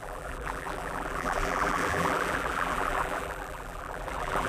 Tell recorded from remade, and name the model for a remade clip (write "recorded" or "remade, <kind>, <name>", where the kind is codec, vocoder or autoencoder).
remade, vocoder, BigVGAN v2